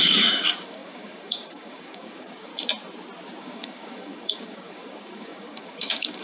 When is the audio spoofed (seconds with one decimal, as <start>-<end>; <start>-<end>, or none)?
0.0-2.5; 3.4-6.2